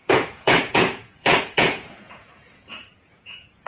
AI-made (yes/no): yes